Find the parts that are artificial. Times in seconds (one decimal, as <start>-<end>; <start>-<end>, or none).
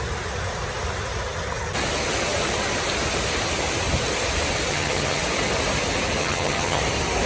4.7-5.2; 6.2-6.8